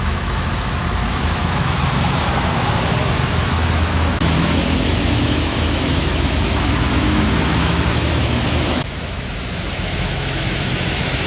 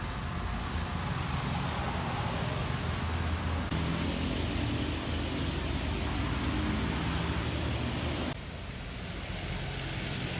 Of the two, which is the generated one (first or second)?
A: first